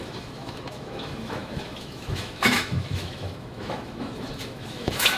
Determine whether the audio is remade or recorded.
remade